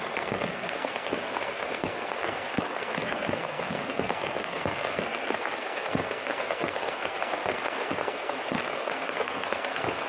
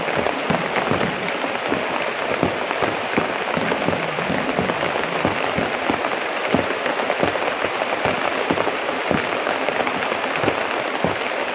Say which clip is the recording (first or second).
second